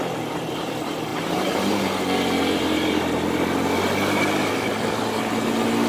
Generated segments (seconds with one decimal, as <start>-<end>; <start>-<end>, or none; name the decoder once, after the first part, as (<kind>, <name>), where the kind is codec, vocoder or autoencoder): none